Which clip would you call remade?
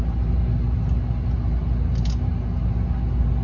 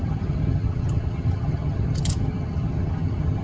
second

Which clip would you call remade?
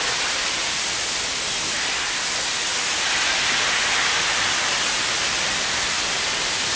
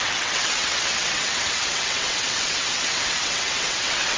second